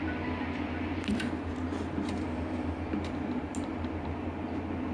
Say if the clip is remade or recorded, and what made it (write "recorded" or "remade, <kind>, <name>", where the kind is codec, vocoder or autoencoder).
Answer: recorded